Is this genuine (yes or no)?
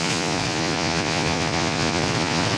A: no